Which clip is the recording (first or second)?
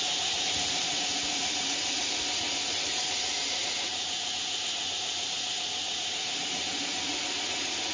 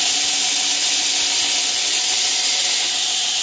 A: second